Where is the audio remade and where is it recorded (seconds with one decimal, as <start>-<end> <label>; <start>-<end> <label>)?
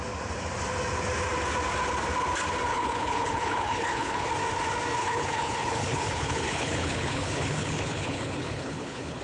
0.0-2.7 recorded; 2.7-4.3 remade; 4.3-5.0 recorded; 5.0-9.2 remade